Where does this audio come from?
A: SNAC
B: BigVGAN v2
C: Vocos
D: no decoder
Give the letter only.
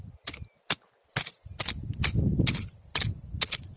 D